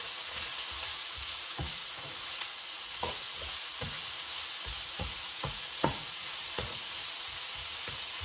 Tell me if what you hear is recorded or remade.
remade